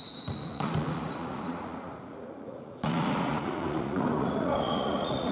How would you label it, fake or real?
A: fake